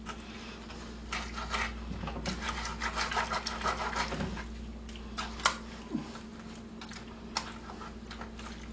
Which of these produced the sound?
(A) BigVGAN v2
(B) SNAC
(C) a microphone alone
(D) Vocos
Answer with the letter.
C